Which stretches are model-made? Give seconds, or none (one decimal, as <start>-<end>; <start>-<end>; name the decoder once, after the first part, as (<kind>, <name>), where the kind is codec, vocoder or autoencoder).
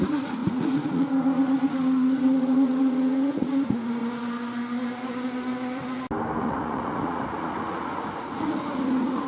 0.0-4.0 (vocoder, Vocos); 6.4-9.3